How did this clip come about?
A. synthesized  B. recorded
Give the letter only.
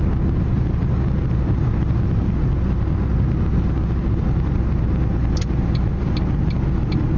B